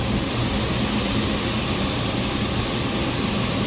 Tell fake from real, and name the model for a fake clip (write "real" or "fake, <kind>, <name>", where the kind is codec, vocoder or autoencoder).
real